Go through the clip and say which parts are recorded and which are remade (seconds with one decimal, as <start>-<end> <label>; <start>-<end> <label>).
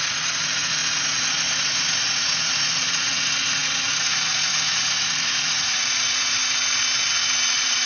0.0-6.4 remade; 6.4-7.5 recorded; 7.5-7.9 remade